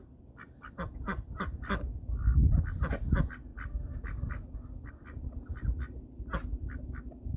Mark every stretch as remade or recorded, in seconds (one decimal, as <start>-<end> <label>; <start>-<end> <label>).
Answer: 0.0-7.4 recorded